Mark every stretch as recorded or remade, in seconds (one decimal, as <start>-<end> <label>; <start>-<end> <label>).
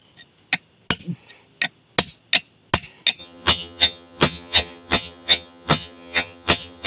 0.0-3.2 recorded; 3.2-6.9 remade